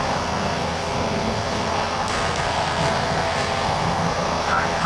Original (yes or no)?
no